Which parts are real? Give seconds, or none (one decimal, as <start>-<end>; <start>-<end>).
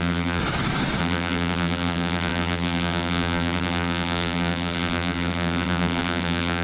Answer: 0.4-1.0